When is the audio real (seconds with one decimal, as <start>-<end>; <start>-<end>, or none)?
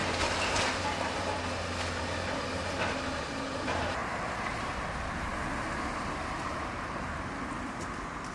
0.0-2.8; 5.3-6.0